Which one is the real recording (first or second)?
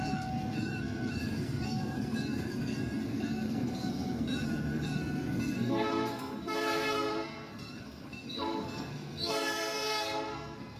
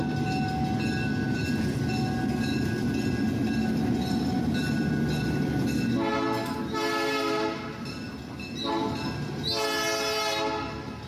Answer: second